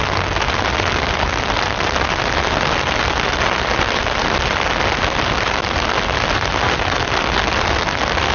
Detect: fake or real real